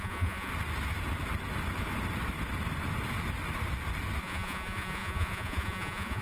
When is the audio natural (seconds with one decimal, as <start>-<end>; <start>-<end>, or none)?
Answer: 0.5-4.2